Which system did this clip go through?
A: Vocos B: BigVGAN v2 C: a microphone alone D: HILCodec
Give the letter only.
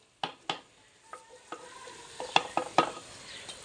C